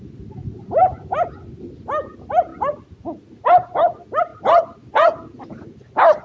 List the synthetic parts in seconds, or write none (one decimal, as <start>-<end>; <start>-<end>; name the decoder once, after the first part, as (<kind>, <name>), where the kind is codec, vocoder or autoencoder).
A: none